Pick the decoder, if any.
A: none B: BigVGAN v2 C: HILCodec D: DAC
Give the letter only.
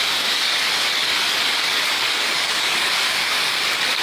D